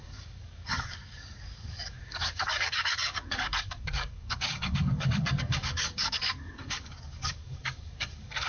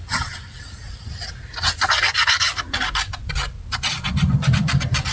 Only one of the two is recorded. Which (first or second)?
second